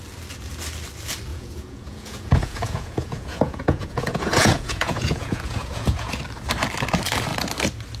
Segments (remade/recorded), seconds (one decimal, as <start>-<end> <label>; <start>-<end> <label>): 0.0-1.3 recorded; 1.3-6.1 remade; 6.1-8.0 recorded